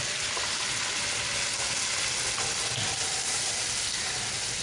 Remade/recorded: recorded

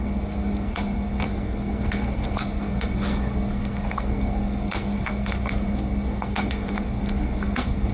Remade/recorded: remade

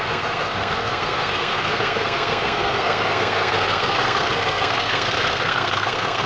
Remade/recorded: remade